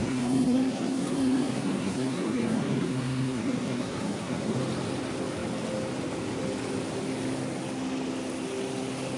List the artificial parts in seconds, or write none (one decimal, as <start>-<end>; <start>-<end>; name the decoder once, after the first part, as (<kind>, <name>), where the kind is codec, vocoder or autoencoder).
0.0-4.6 (codec, SNAC)